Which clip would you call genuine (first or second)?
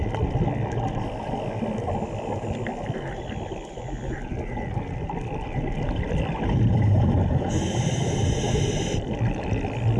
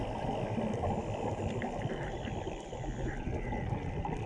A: first